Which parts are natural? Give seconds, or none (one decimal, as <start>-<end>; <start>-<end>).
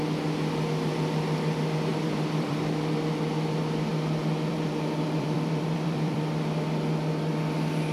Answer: 0.0-1.9; 2.6-3.9; 6.3-7.9